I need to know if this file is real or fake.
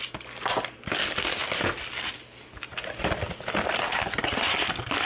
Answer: real